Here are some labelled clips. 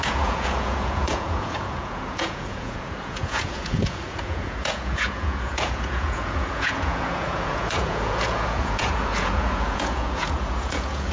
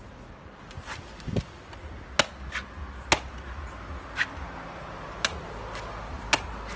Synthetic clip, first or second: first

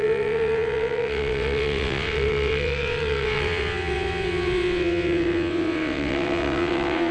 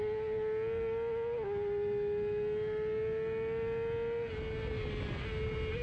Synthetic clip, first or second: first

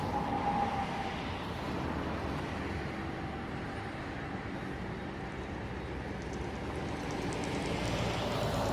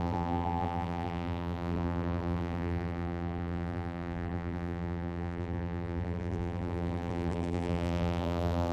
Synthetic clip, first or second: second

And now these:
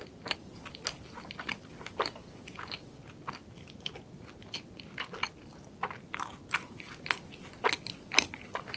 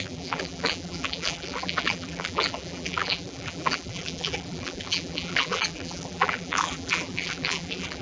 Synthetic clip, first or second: second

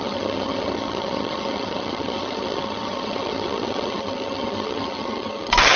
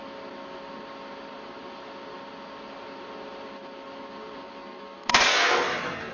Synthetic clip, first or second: first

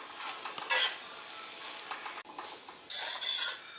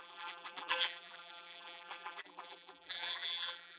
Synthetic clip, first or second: second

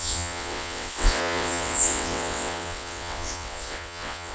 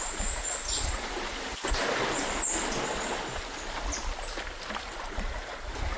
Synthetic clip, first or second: first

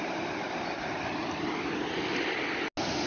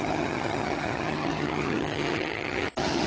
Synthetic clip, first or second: second